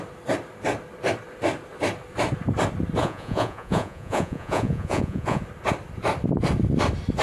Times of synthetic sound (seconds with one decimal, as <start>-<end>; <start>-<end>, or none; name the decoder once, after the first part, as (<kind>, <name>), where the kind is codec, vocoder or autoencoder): 3.0-5.4 (vocoder, Vocos)